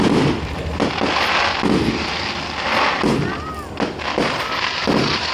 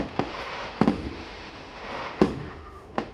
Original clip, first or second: first